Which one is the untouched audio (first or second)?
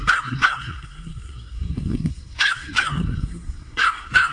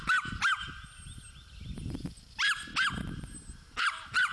second